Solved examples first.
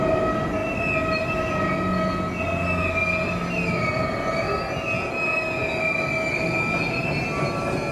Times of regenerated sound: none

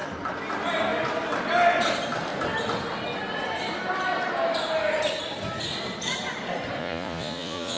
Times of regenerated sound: 6.8-7.8 (vocoder, Vocos)